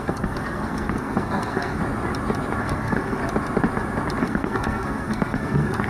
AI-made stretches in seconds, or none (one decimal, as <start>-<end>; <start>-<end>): 0.0-1.8; 2.6-3.2; 4.2-5.9